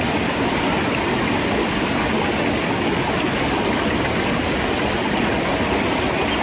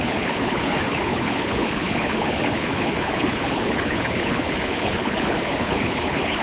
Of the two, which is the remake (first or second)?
second